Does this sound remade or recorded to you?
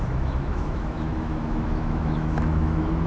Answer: remade